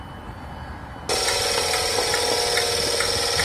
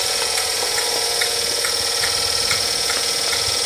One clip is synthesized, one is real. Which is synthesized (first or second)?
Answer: second